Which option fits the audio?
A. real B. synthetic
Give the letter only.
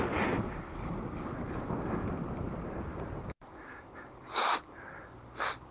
A